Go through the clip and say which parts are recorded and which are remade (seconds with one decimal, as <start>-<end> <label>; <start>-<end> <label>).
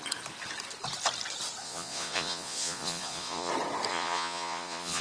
0.0-1.6 recorded; 1.6-3.5 remade; 3.5-3.9 recorded; 3.9-5.0 remade